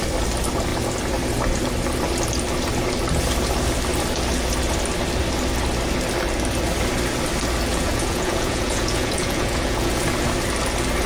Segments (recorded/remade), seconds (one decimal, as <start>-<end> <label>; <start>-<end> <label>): 0.0-7.7 recorded; 7.7-10.0 remade; 10.0-11.1 recorded